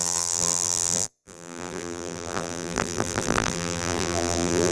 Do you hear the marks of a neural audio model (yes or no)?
yes